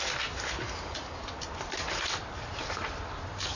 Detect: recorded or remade recorded